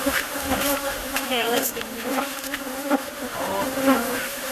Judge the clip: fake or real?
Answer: fake